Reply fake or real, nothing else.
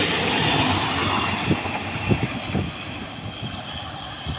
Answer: real